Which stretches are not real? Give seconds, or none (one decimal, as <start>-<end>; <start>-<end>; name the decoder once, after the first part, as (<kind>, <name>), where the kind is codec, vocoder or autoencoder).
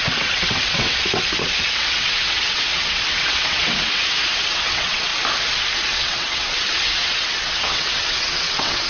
0.0-5.1 (vocoder, WaveNeXt); 5.7-8.9